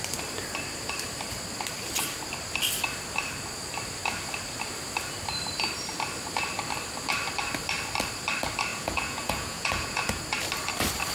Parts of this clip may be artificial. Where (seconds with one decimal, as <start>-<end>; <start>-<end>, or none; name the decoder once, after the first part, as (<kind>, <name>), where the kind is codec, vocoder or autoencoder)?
8.7-10.2 (vocoder, Vocos)